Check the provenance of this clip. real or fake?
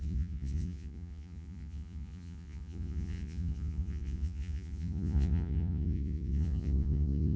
fake